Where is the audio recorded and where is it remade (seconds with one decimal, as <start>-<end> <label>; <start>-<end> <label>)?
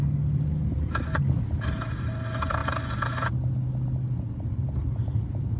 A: 0.0-5.6 recorded